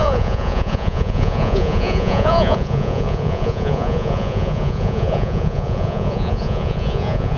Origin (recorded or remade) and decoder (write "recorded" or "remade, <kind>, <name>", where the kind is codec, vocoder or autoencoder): remade, vocoder, Vocos